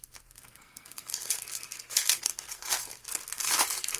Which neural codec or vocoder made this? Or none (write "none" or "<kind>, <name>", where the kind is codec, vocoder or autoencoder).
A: codec, SNAC